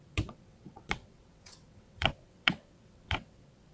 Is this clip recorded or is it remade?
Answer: remade